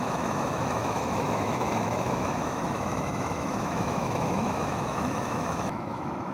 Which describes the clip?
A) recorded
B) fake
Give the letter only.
B